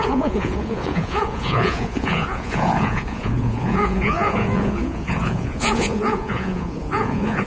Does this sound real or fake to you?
fake